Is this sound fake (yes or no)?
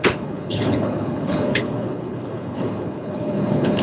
yes